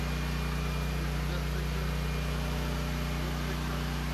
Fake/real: real